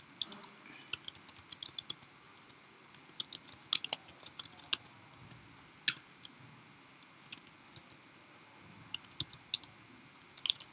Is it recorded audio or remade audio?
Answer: recorded